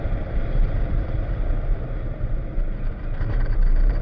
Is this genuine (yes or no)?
no